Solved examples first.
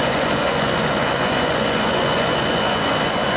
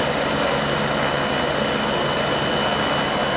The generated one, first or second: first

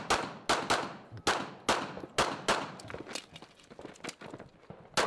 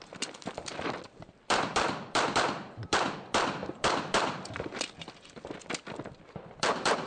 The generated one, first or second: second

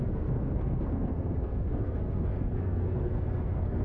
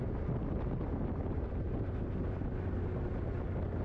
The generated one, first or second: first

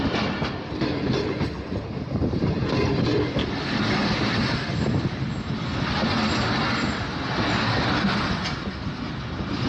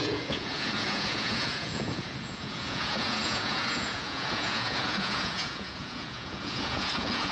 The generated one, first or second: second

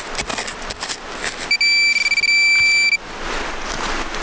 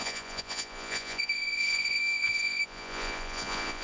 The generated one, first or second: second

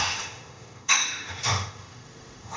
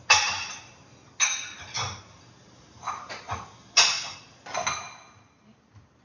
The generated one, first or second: first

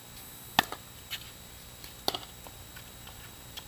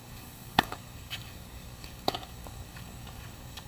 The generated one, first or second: second